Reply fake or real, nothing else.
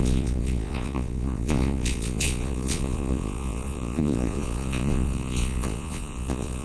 fake